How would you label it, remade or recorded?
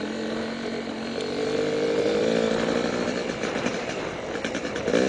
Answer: recorded